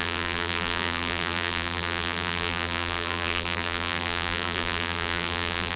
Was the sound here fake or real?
fake